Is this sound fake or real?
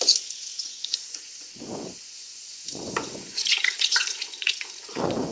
fake